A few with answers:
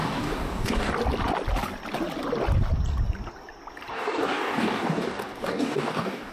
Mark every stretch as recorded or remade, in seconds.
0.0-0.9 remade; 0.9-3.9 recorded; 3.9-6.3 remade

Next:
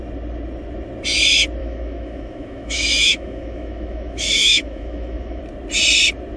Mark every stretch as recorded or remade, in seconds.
0.0-1.6 recorded; 1.6-5.4 remade; 5.4-6.4 recorded